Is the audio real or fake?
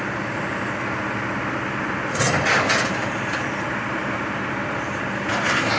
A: real